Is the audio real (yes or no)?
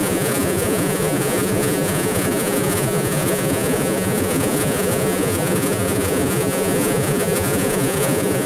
no